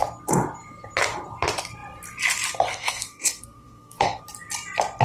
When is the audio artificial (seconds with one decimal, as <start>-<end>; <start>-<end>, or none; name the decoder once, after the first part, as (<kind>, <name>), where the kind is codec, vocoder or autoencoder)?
2.7-4.2 (codec, SNAC)